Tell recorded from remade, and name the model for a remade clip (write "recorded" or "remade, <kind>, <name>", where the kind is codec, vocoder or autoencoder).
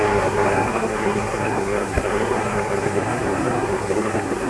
remade, codec, SNAC